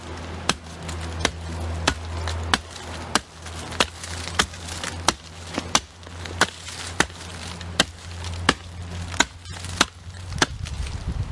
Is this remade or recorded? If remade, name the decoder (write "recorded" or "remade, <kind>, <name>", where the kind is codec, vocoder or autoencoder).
recorded